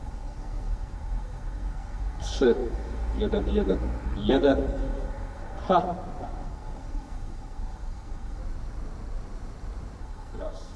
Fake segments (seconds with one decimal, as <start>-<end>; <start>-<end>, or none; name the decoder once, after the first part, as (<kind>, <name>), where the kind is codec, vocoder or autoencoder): 0.0-5.6 (codec, SNAC); 6.2-8.4; 10.0-10.8